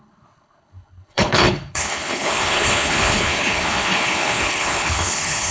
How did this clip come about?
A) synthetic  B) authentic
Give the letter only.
A